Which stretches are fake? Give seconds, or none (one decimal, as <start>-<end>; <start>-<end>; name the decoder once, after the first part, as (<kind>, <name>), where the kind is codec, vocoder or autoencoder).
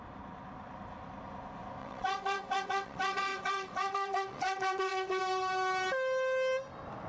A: 1.8-5.2 (vocoder, WaveNeXt)